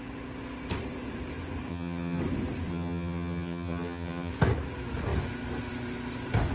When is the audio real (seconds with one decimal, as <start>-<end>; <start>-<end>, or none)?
0.0-1.7; 2.2-2.7; 4.3-6.5